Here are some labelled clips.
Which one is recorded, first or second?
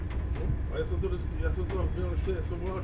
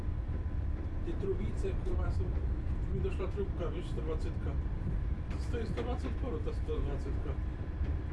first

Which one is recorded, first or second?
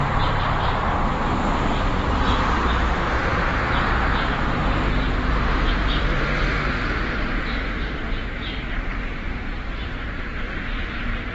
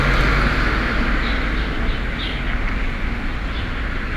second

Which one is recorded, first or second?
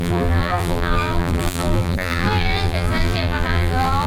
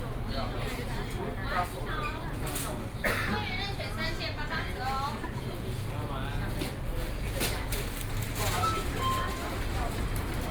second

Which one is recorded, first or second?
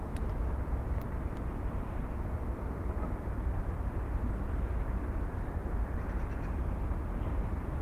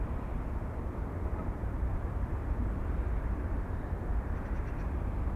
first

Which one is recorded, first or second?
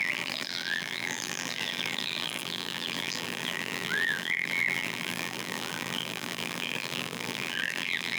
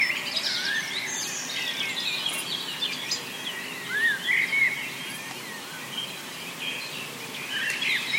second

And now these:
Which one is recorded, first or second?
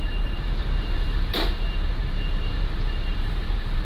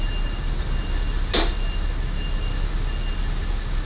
second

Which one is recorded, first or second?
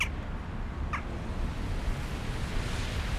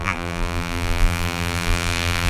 first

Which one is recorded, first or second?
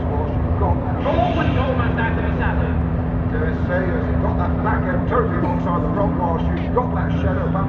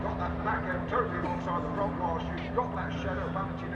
second